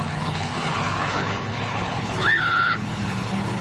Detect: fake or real fake